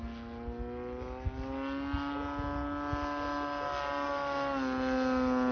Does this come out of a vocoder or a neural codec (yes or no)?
no